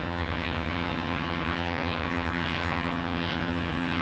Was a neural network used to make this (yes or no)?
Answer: yes